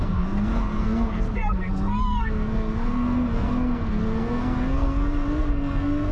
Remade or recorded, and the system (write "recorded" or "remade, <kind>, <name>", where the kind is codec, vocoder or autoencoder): remade, codec, SNAC